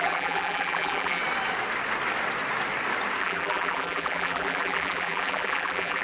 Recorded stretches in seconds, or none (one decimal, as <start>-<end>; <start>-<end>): 1.2-3.2